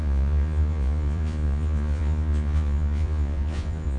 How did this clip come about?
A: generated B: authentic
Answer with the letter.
A